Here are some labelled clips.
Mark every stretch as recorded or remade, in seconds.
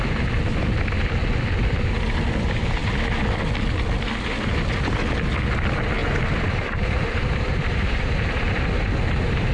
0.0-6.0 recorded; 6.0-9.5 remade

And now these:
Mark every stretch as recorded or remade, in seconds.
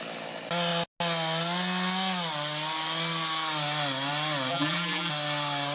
0.0-4.5 recorded; 4.5-5.1 remade; 5.1-5.7 recorded